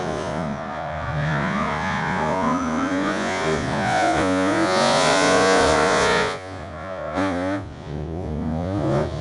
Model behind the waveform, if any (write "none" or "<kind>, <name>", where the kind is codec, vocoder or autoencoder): vocoder, Vocos